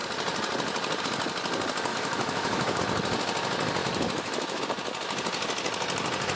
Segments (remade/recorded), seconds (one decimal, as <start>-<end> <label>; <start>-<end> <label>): 0.0-1.9 recorded; 1.9-2.8 remade; 2.8-3.8 recorded; 3.8-4.6 remade; 4.6-6.4 recorded